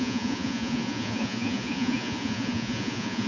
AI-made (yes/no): yes